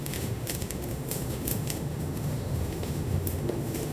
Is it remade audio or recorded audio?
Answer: remade